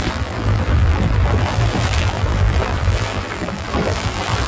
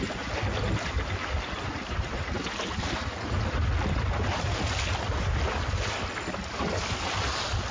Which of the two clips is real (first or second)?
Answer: second